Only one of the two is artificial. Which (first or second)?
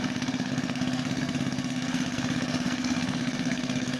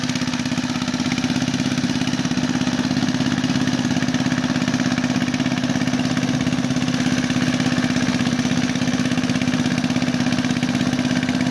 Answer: first